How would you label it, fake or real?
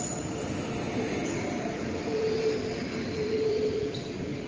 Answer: fake